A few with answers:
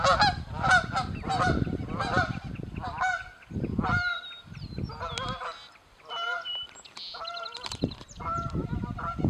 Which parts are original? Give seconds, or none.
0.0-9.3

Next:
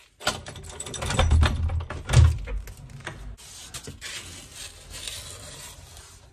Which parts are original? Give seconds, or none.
0.0-6.3

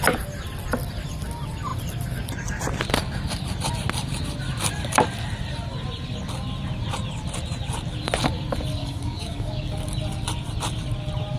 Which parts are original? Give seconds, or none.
0.0-8.8; 9.7-11.4